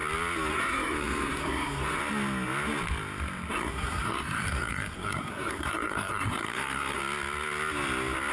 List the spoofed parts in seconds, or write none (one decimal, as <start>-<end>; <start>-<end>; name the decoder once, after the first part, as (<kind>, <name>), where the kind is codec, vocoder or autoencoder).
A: 0.5-2.0 (codec, SNAC); 3.5-7.0